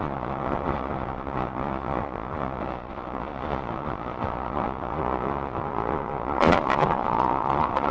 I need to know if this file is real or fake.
fake